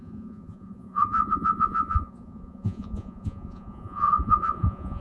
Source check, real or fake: fake